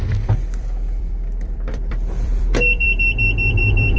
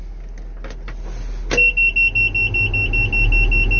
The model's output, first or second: first